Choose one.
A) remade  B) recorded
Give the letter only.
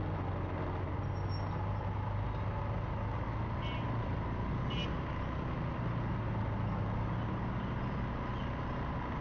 B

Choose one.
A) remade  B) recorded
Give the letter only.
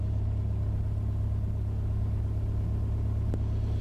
B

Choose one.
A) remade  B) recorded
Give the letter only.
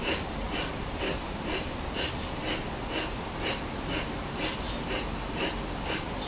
B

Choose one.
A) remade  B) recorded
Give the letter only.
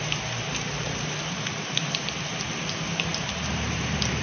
A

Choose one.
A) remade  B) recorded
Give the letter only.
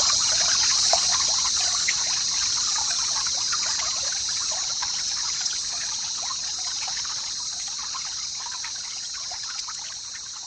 A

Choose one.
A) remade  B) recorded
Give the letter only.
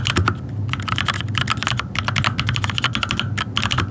B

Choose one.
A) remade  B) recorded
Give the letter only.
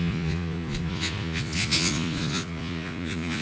A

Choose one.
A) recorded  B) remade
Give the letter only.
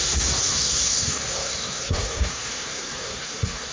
B